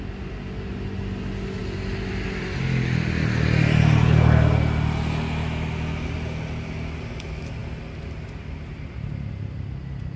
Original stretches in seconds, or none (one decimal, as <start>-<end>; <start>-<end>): 0.0-10.2